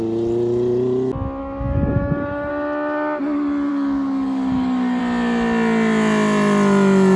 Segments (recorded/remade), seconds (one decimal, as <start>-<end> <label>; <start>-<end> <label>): 0.0-1.4 recorded; 1.4-2.5 remade; 2.5-3.7 recorded; 3.7-5.0 remade; 5.0-7.2 recorded